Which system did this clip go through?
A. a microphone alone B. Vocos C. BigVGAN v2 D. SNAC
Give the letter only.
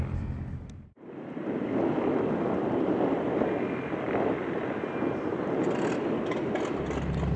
A